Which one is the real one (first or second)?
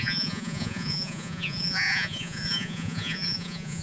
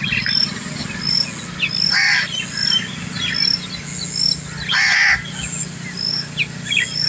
second